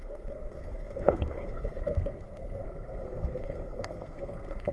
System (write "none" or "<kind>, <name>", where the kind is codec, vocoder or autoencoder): codec, SNAC